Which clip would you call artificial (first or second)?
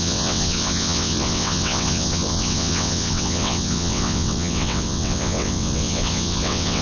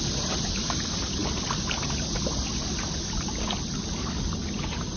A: first